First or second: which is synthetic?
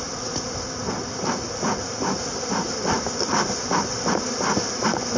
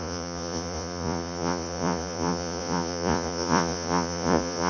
second